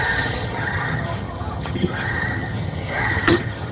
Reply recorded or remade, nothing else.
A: remade